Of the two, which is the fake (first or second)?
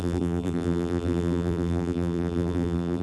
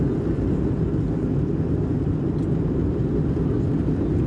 first